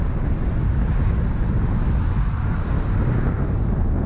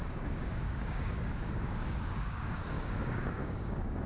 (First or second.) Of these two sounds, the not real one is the second